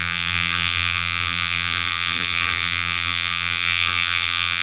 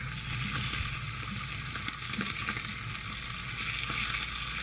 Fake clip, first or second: first